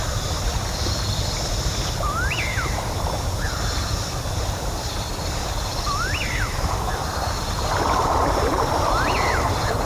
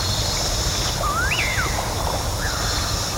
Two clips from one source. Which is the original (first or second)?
second